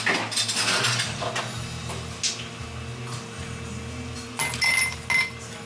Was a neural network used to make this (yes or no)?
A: no